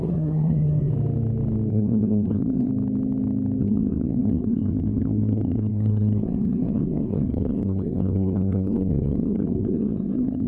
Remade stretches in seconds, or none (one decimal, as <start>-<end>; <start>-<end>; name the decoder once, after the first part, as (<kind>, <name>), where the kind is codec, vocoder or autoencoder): 0.0-0.9 (codec, SNAC); 1.7-2.7; 3.6-10.5